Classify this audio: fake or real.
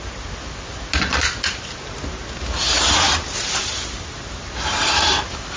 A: real